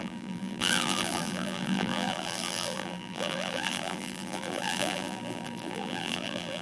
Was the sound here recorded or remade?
remade